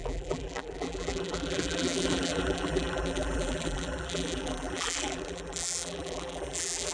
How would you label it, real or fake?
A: fake